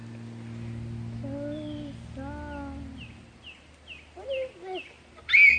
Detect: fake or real real